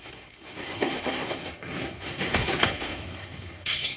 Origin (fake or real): fake